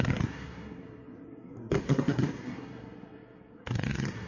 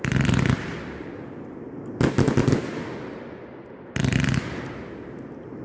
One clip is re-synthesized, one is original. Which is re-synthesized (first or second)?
first